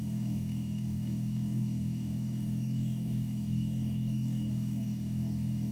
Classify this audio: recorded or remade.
remade